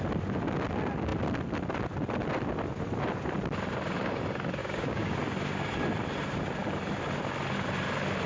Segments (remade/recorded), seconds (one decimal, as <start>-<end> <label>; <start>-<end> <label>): 0.0-4.6 recorded; 4.6-5.1 remade; 5.1-8.3 recorded